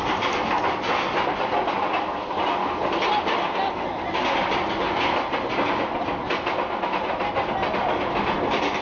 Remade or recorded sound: recorded